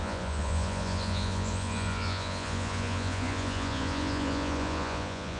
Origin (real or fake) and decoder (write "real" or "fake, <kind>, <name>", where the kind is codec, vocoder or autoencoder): fake, vocoder, Vocos